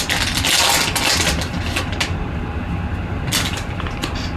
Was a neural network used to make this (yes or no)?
no